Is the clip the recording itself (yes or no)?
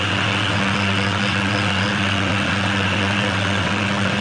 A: no